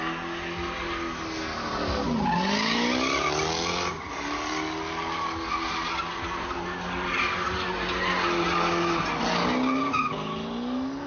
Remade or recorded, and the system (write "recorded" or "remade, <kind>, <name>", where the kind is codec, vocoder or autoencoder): recorded